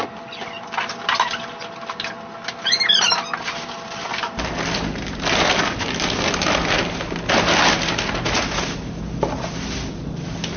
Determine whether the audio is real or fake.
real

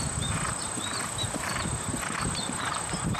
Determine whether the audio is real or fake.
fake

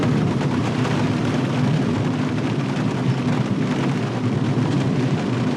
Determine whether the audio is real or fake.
fake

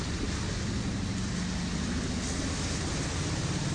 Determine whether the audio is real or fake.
real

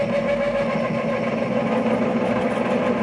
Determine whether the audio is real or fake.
real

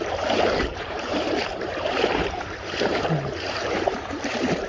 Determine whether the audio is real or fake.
fake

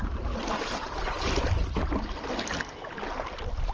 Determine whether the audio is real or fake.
real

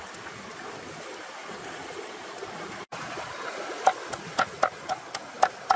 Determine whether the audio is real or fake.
real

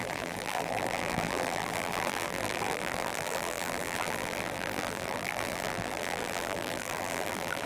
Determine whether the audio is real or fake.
fake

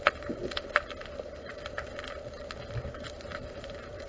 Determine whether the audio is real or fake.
real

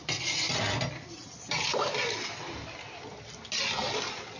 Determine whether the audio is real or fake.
real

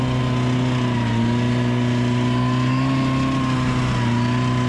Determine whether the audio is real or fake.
real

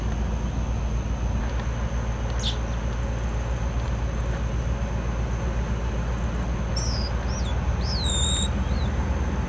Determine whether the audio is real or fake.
real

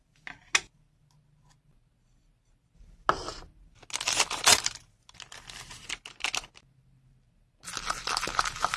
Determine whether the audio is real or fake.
real